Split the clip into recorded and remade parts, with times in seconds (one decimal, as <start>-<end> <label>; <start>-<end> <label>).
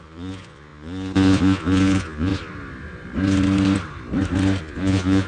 0.0-2.3 remade; 2.3-4.6 recorded; 4.6-5.3 remade